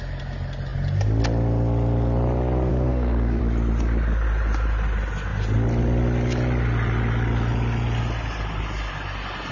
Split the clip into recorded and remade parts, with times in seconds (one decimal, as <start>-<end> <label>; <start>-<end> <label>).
0.0-2.7 recorded; 2.7-3.4 remade; 3.4-9.5 recorded